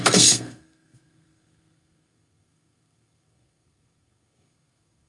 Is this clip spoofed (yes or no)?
yes